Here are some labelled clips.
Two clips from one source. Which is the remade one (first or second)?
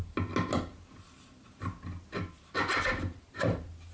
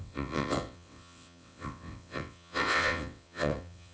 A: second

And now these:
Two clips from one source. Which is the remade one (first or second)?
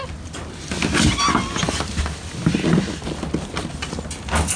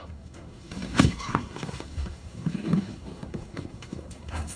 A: second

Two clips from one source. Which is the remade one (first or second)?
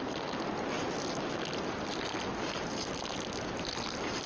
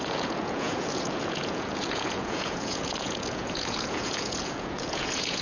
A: second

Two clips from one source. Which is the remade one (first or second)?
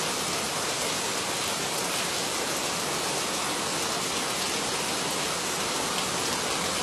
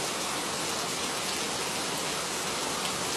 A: first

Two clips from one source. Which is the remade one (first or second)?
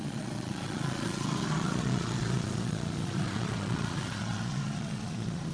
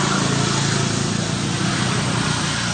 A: first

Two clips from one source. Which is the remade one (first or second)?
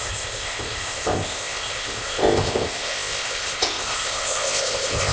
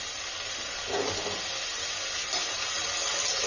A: first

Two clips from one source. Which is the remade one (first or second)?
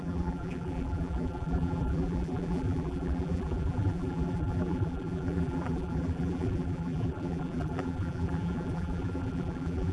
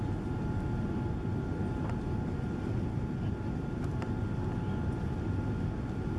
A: first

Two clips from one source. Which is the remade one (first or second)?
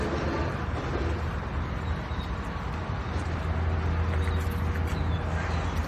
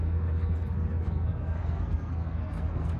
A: second